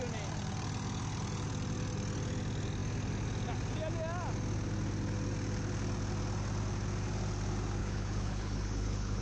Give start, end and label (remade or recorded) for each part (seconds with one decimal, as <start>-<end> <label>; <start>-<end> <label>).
0.0-7.8 recorded; 7.8-9.2 remade